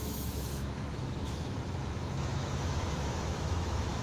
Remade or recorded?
remade